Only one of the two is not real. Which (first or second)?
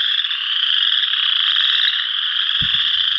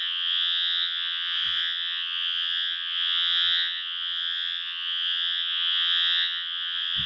second